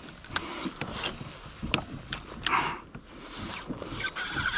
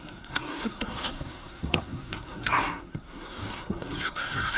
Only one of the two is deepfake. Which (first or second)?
second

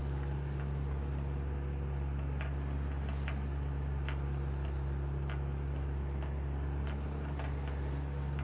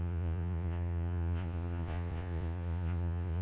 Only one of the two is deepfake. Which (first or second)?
second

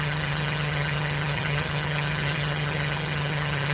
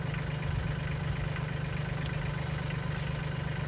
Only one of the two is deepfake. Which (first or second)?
first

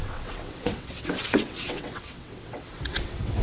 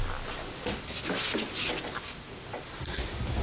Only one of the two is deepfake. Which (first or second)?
first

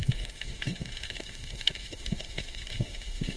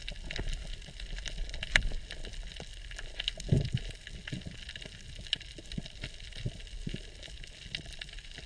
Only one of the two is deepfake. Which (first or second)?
first